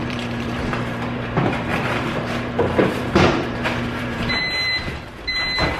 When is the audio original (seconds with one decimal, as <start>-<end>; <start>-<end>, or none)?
none